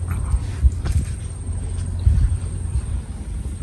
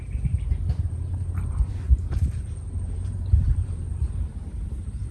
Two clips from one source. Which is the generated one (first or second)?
second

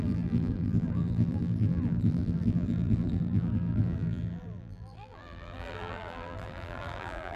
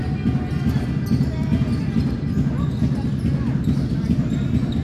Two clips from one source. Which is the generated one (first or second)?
first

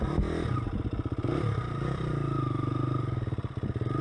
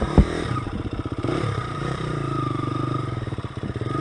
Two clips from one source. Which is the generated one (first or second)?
second